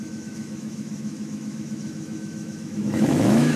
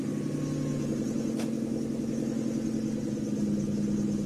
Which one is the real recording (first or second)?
second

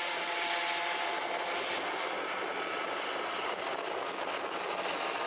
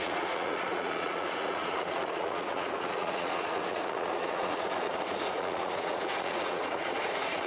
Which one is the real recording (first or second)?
first